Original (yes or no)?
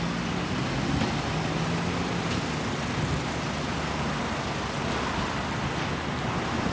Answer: yes